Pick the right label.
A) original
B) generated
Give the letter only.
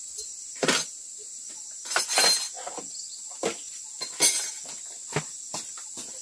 A